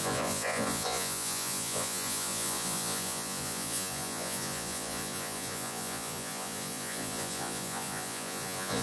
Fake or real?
fake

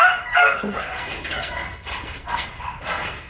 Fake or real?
fake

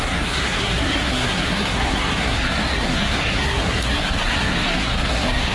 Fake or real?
fake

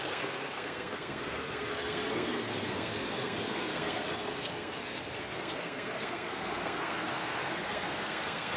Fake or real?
fake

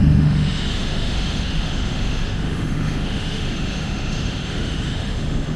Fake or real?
fake